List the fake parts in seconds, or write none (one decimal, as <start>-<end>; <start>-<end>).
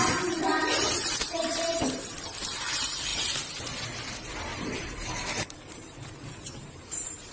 4.5-7.3